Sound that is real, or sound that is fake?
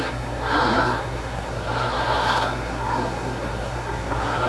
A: fake